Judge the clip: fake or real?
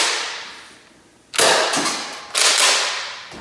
real